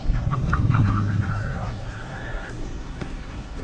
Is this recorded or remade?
remade